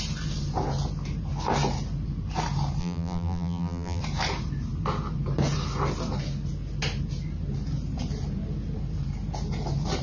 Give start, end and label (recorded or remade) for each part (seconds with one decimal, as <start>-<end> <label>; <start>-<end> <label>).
0.0-2.8 recorded; 2.8-4.0 remade; 4.0-10.0 recorded